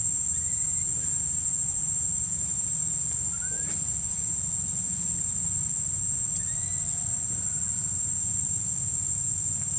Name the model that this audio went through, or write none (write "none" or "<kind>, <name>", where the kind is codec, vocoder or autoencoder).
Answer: none